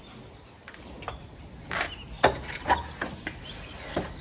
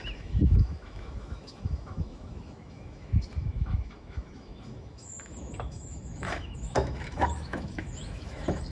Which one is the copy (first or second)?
second